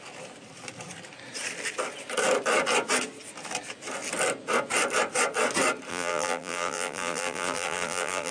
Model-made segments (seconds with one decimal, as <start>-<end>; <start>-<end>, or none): 5.9-8.3

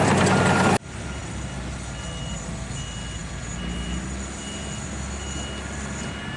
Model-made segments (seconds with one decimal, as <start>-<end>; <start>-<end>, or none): none

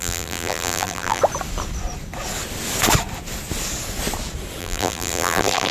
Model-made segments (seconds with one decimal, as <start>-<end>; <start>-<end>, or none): 0.0-1.2; 4.6-5.7

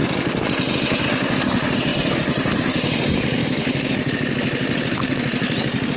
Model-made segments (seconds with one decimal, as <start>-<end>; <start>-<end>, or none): 1.0-6.0

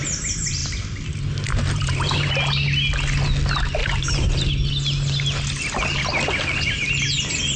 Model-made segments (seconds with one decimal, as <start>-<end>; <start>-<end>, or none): 1.5-2.3; 3.8-4.5